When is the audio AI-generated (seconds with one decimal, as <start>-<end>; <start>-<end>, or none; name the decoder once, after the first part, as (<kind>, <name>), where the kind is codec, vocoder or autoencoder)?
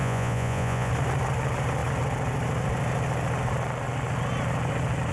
0.0-0.9 (vocoder, Vocos)